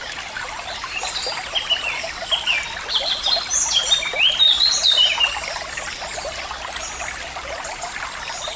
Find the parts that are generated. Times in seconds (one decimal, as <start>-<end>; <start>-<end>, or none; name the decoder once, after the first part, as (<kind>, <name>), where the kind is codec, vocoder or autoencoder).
none